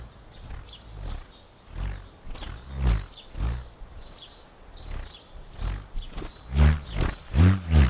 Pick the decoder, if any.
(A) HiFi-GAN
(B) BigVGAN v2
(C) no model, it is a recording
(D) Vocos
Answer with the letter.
C